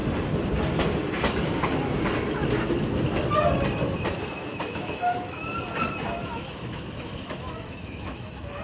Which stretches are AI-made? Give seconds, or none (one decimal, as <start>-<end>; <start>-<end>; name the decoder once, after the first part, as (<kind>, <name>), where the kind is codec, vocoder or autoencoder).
4.5-5.4 (autoencoder, DAC-VAE); 6.2-8.6